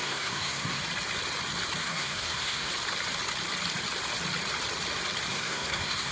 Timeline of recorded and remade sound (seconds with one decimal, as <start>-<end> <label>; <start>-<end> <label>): 0.0-0.8 remade; 0.8-1.8 recorded; 1.8-2.7 remade; 2.7-5.3 recorded; 5.3-6.1 remade